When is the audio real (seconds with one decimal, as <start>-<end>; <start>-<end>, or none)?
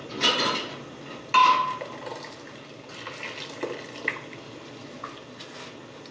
0.0-6.1